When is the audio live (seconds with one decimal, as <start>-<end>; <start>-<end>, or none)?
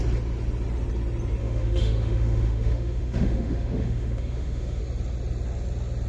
0.0-1.4; 4.8-6.1